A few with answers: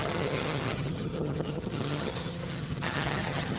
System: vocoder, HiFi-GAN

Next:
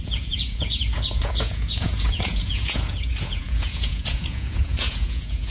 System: vocoder, Vocos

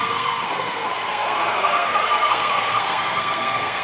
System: codec, SNAC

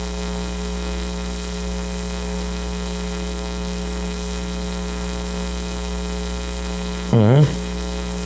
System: codec, SNAC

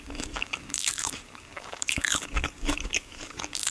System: codec, DAC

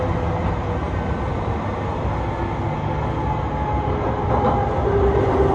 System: none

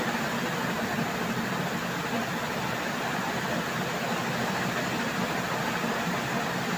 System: none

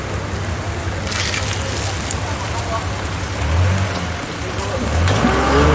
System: none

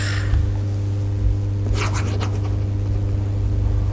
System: none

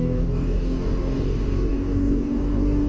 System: codec, DAC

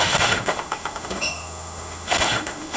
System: autoencoder, DAC-VAE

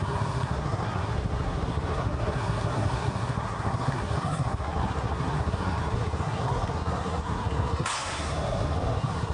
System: codec, SNAC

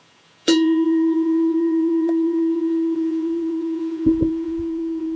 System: vocoder, Vocos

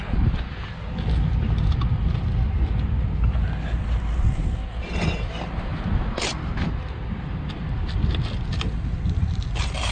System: none